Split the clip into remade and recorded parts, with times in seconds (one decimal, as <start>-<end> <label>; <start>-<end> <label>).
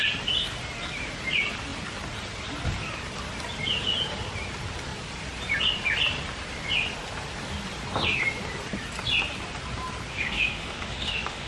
0.0-10.1 recorded; 10.1-11.5 remade